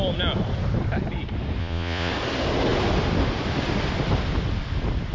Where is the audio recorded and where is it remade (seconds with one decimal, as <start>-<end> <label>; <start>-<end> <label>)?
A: 0.0-1.6 recorded; 1.6-2.1 remade; 2.1-5.1 recorded